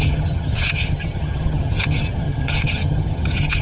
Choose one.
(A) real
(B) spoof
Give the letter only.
B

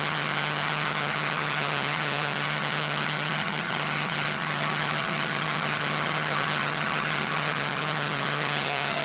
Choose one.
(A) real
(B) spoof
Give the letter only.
B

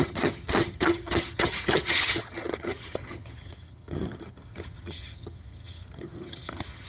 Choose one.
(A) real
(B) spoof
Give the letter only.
B